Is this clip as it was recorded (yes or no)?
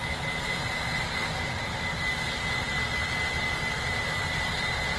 yes